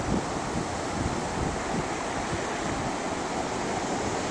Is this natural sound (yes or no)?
yes